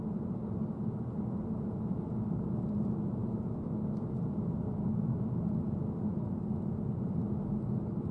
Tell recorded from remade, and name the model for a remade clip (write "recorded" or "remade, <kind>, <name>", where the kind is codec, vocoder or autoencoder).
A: recorded